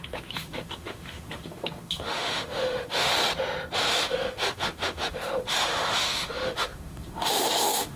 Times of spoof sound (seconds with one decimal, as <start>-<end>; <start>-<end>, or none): 0.0-3.1; 3.9-8.0